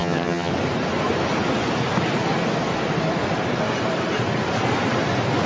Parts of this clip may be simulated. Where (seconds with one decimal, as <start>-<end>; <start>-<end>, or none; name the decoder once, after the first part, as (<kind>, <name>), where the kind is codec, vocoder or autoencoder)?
0.0-0.5 (vocoder, HiFi-GAN)